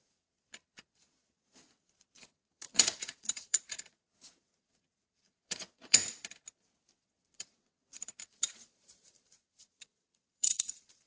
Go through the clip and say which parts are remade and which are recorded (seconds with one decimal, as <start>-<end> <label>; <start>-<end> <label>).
0.0-6.0 remade; 6.0-6.9 recorded; 6.9-11.1 remade